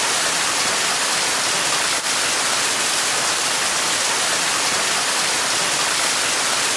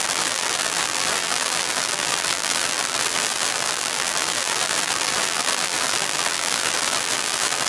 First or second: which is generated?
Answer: second